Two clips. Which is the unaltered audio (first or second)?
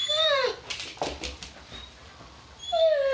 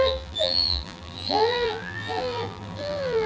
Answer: first